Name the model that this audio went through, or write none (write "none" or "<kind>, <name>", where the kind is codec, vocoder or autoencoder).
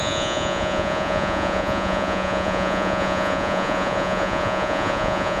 vocoder, Vocos